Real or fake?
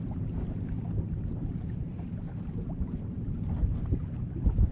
fake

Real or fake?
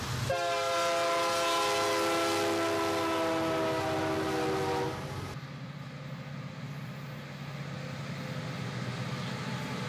real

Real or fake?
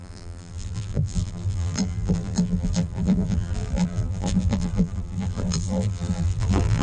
fake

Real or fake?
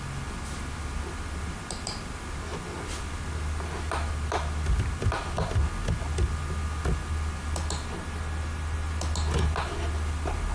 real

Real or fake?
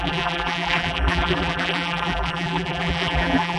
fake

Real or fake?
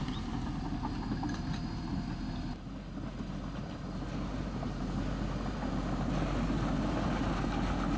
real